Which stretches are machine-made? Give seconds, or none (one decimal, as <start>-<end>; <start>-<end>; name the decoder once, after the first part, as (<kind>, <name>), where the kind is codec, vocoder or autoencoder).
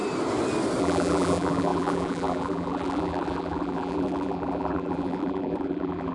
0.8-6.1 (vocoder, BigVGAN v2)